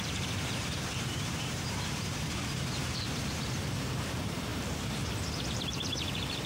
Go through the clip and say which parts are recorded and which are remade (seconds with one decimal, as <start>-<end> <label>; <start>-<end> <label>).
0.0-6.5 remade

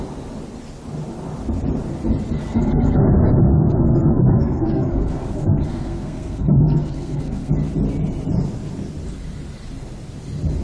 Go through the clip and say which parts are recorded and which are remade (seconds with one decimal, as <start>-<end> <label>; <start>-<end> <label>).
0.0-2.4 recorded; 2.4-3.0 remade; 3.0-3.5 recorded; 3.5-7.5 remade; 7.5-10.6 recorded

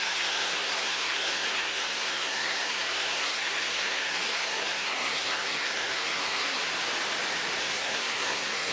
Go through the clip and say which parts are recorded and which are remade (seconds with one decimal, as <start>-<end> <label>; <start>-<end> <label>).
0.0-6.6 remade; 6.6-7.6 recorded; 7.6-8.7 remade